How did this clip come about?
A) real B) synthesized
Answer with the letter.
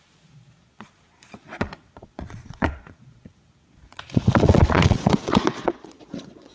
B